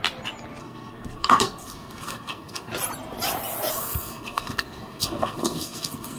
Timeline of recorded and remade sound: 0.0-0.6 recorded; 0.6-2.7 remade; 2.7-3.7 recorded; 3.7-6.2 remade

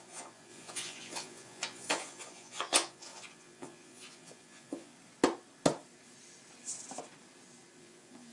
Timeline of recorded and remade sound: 0.0-4.9 remade; 4.9-7.8 recorded; 7.8-8.3 remade

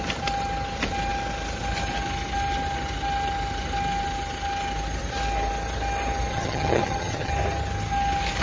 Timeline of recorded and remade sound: 0.0-6.3 recorded; 6.3-7.3 remade; 7.3-8.4 recorded

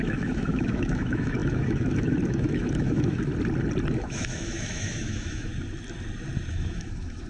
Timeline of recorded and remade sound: 0.0-3.3 remade; 3.3-3.9 recorded; 3.9-5.5 remade; 5.5-6.5 recorded; 6.5-7.3 remade